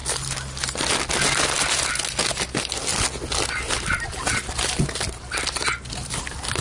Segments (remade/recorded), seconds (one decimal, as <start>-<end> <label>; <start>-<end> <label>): 0.0-6.6 recorded